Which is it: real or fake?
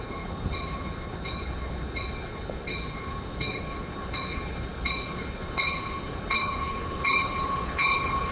fake